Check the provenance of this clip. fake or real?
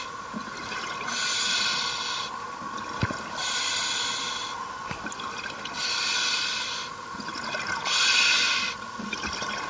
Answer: real